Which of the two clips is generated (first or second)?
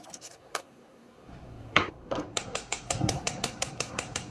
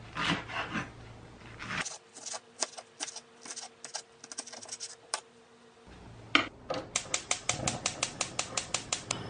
first